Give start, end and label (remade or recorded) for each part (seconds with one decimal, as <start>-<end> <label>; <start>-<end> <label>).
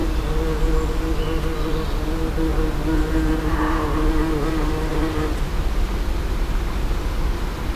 0.0-7.8 recorded